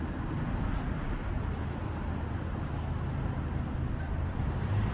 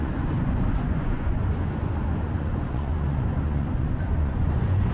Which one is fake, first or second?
second